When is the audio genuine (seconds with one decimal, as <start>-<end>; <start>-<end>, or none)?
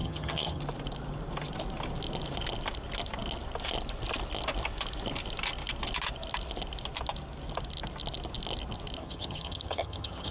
0.6-9.0